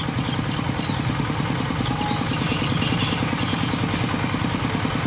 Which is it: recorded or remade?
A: recorded